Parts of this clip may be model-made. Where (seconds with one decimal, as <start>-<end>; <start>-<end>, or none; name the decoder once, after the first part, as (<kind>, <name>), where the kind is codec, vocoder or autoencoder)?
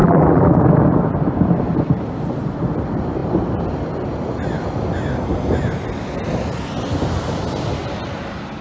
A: 0.0-0.5 (vocoder, BigVGAN v2)